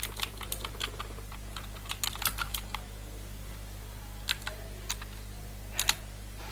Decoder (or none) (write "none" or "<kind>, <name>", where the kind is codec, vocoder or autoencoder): none